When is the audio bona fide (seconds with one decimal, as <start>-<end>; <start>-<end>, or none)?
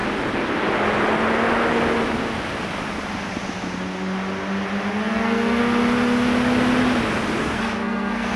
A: 0.0-5.0; 5.6-7.4